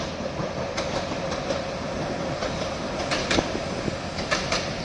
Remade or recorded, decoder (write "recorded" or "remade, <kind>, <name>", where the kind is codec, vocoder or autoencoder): recorded